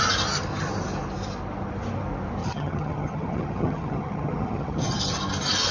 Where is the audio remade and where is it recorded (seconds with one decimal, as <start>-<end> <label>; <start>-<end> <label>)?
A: 0.0-2.4 recorded; 2.4-5.0 remade; 5.0-5.7 recorded